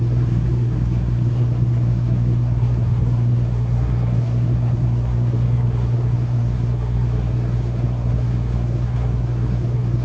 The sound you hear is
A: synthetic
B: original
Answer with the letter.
A